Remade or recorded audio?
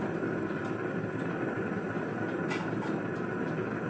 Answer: recorded